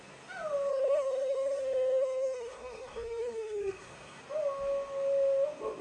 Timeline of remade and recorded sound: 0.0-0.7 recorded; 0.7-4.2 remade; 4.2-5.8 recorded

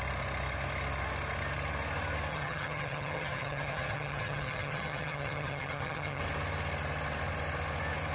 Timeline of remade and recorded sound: 0.0-2.3 recorded; 2.3-6.2 remade; 6.2-8.1 recorded

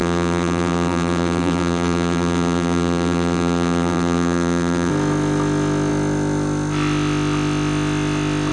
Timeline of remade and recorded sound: 0.0-4.9 remade; 4.9-8.5 recorded

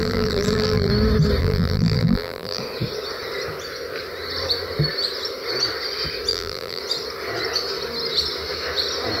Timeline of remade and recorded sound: 0.0-0.9 remade; 0.9-1.4 recorded; 1.4-2.6 remade; 2.6-6.3 recorded; 6.3-6.8 remade; 6.8-9.2 recorded

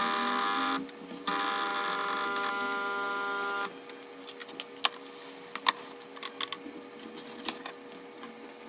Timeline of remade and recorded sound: 0.0-8.7 recorded

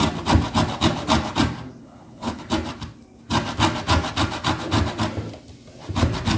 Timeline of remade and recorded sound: 0.0-1.8 recorded; 1.8-2.4 remade; 2.4-6.4 recorded